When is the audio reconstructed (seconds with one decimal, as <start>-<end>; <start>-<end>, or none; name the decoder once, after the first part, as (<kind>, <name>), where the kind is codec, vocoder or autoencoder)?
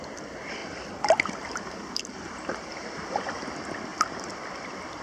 0.0-5.0 (vocoder, BigVGAN v2)